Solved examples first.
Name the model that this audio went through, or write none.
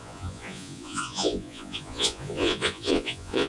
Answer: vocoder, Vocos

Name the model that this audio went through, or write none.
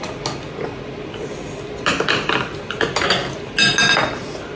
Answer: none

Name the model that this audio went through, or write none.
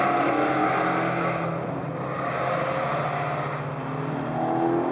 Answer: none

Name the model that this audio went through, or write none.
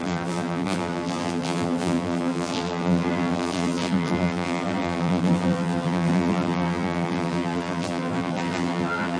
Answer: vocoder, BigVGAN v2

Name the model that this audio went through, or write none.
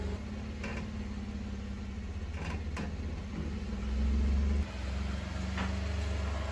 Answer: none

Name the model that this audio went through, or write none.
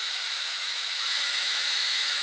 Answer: autoencoder, DAC-VAE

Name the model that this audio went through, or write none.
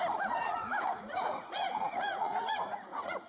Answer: vocoder, Vocos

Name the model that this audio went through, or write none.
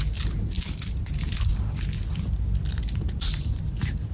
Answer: none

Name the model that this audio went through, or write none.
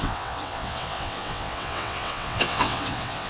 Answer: vocoder, WaveNeXt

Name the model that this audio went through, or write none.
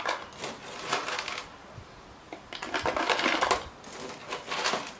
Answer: none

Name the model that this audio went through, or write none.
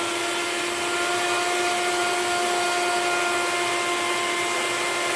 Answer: none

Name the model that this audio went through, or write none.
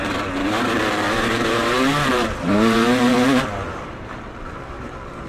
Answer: vocoder, BigVGAN v2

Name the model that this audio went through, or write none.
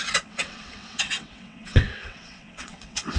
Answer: vocoder, WaveNeXt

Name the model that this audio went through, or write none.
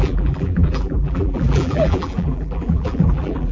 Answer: vocoder, BigVGAN v2